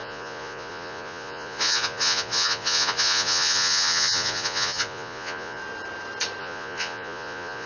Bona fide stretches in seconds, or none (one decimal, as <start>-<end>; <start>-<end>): 5.6-6.4